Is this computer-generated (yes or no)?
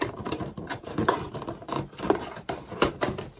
yes